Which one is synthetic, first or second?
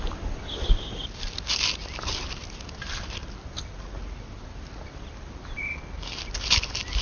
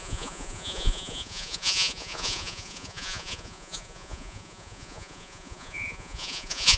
second